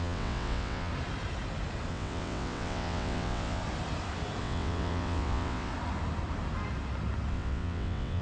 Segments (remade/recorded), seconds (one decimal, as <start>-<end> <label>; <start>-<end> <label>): 0.0-0.9 remade; 0.9-1.9 recorded; 1.9-3.6 remade; 3.6-4.4 recorded; 4.4-5.7 remade; 5.7-7.3 recorded; 7.3-8.2 remade